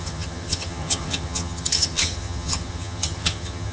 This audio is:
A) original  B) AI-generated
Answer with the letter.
B